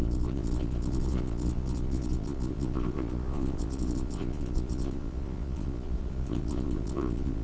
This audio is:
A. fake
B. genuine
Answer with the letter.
A